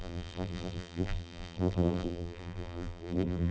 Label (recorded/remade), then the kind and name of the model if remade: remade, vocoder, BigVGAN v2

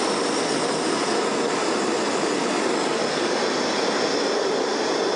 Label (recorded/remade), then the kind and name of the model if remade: recorded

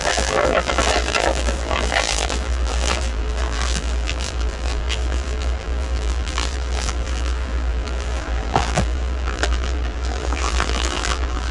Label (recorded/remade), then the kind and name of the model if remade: remade, vocoder, BigVGAN v2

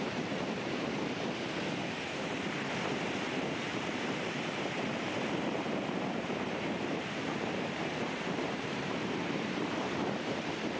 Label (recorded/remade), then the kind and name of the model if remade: remade, vocoder, BigVGAN v2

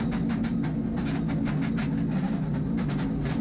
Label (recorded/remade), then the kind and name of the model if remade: recorded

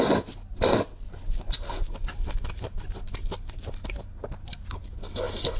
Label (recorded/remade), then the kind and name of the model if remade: recorded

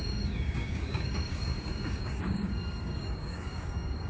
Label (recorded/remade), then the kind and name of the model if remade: remade, codec, DAC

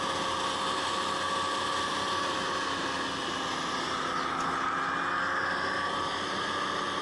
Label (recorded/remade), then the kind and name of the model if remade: recorded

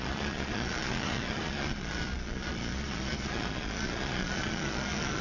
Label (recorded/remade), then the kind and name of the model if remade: remade, vocoder, Vocos